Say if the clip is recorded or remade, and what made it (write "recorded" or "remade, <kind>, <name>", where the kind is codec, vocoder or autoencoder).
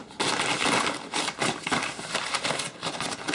recorded